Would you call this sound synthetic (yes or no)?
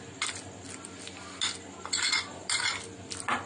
no